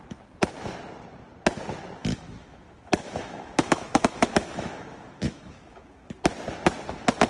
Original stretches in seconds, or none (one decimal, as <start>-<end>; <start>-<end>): 0.0-2.0; 6.1-7.3